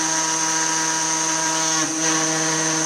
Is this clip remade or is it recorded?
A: recorded